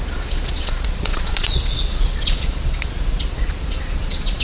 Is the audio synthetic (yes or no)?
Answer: yes